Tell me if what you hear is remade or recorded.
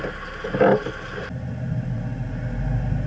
recorded